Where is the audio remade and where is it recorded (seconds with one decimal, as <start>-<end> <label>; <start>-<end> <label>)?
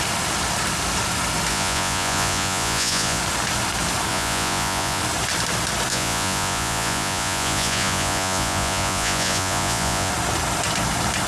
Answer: 0.0-1.5 recorded; 1.5-3.2 remade; 3.2-4.1 recorded; 4.1-5.0 remade; 5.0-5.9 recorded; 5.9-10.1 remade; 10.1-11.3 recorded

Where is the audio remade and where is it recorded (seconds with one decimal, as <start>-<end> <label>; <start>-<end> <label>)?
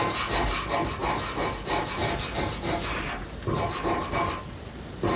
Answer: 0.0-5.2 recorded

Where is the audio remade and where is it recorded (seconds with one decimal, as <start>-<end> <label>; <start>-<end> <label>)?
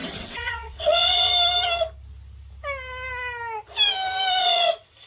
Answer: 0.0-1.3 remade; 1.3-4.4 recorded; 4.4-5.1 remade